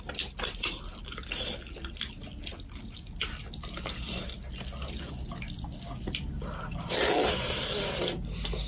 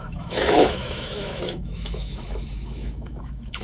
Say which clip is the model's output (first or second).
second